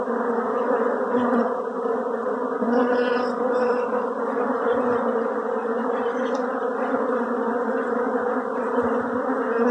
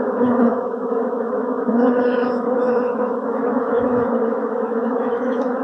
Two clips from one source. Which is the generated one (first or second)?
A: second